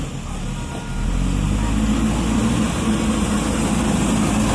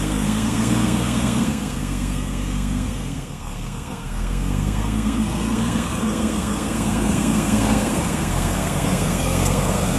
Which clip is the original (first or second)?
first